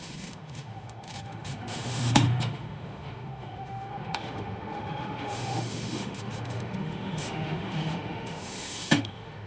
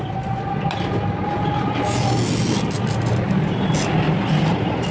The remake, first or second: first